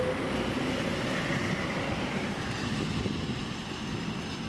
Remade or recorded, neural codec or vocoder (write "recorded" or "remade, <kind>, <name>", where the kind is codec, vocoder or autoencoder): recorded